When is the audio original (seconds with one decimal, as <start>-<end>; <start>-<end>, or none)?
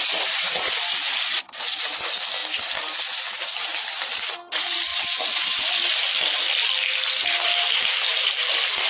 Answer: 0.0-8.9